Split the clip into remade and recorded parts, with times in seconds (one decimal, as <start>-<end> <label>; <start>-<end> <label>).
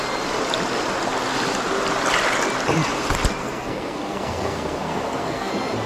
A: 0.0-3.4 recorded; 3.4-5.5 remade; 5.5-5.9 recorded